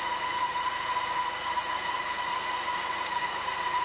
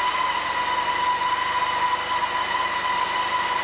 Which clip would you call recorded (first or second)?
second